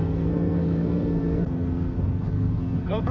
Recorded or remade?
remade